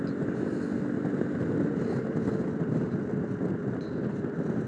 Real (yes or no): yes